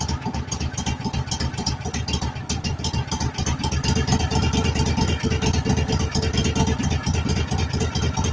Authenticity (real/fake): real